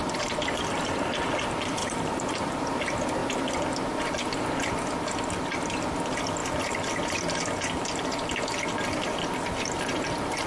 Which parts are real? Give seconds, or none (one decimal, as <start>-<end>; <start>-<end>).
0.0-1.8; 2.8-10.5